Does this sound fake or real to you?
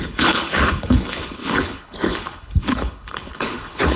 fake